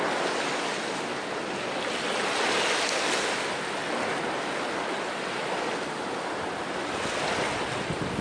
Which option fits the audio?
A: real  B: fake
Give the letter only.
A